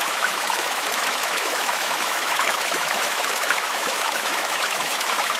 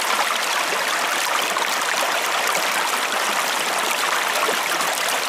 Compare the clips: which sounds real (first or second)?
second